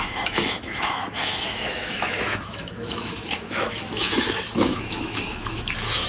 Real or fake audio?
fake